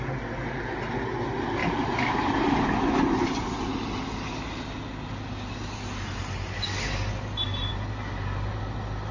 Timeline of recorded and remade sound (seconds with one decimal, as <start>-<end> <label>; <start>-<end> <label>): 0.0-1.6 recorded; 1.6-3.2 remade; 3.2-9.1 recorded